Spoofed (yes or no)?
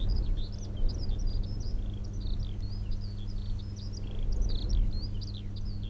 no